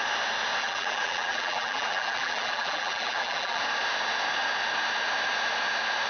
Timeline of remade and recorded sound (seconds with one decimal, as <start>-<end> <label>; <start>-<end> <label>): 0.0-0.6 recorded; 0.6-3.6 remade; 3.6-6.1 recorded